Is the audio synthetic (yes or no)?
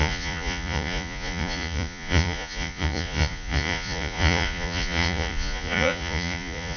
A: yes